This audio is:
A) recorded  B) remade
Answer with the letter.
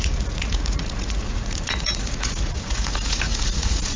B